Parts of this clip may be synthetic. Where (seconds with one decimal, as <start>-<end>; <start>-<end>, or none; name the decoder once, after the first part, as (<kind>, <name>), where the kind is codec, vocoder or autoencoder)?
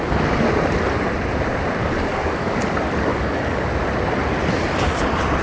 1.8-2.6 (codec, DAC); 3.1-3.7